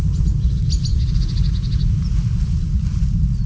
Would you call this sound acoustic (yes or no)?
yes